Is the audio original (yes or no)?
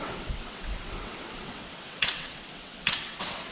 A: no